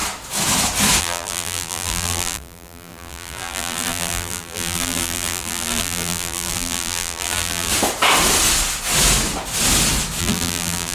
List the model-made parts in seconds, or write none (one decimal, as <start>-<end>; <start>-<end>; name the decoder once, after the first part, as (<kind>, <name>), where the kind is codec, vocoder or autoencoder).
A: 1.0-7.7 (vocoder, BigVGAN v2); 10.2-10.9